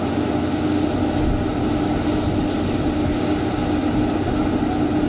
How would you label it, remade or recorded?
recorded